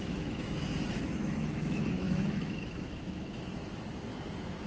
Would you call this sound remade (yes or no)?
yes